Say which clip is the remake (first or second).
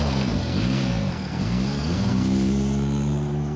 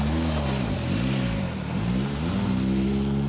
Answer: first